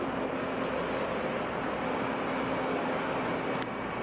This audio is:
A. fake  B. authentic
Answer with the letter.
B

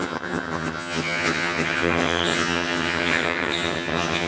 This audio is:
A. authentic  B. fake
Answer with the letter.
B